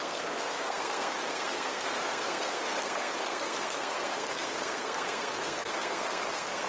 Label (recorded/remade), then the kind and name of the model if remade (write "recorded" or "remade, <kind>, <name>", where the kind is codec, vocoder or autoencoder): remade, codec, SNAC